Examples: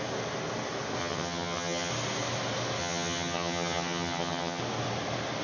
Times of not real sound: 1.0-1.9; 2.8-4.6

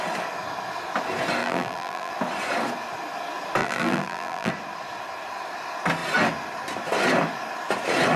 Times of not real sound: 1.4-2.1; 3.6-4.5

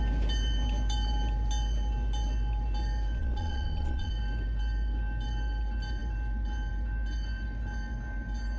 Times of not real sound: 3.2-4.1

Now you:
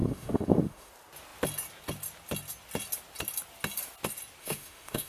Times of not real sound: 0.0-0.9; 4.4-5.1

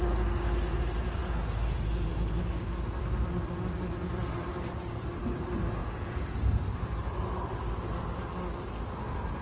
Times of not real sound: 5.8-6.6

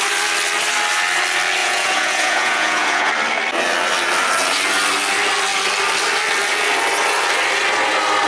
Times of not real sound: 1.6-3.1